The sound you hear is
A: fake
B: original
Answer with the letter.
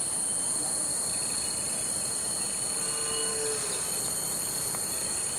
B